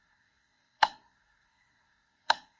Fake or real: fake